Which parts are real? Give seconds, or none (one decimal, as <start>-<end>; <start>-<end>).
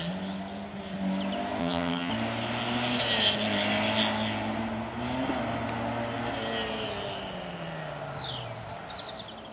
0.0-1.6; 2.1-9.5